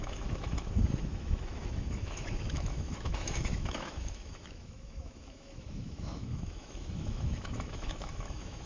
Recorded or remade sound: remade